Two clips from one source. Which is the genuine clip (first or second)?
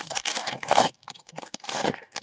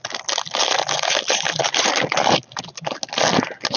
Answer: second